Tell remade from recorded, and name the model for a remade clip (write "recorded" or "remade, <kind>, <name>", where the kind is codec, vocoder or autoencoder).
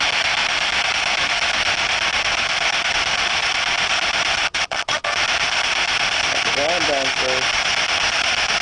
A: recorded